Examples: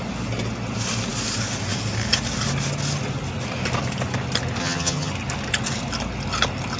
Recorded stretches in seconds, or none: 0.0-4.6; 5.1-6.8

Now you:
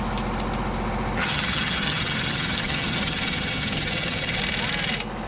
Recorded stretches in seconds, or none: 0.0-1.2; 4.4-5.3

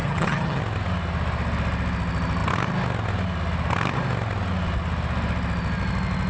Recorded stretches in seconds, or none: 0.6-6.3

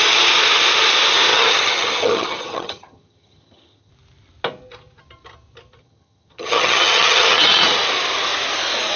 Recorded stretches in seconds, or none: 0.0-1.3; 3.9-5.8; 7.4-9.0

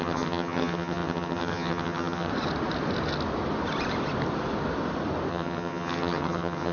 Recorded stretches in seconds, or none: 2.3-5.3